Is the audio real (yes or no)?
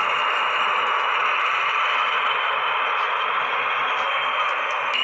yes